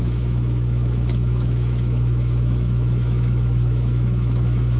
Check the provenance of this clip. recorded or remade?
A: remade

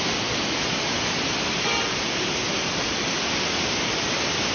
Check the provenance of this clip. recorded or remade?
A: remade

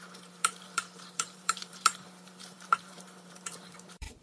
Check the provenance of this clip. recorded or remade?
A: remade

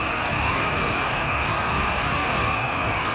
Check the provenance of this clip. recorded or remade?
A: remade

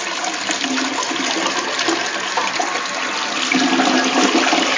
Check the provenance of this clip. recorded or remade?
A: recorded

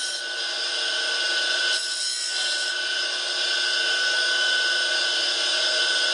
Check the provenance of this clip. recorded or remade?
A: recorded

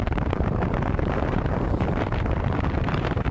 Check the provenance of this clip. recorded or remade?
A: remade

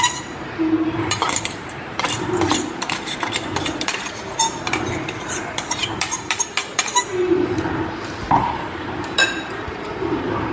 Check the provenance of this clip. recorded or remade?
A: remade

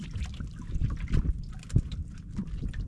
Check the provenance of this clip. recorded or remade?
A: recorded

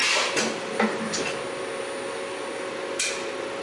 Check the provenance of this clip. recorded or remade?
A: recorded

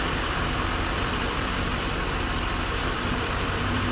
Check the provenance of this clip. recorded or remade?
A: remade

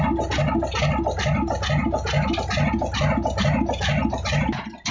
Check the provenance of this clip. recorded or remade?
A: recorded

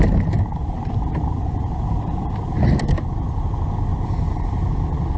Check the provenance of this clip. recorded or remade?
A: recorded